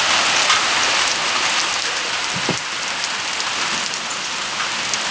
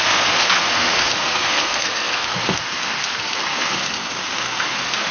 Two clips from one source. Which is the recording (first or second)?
first